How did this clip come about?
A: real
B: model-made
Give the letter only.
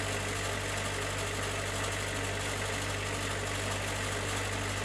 A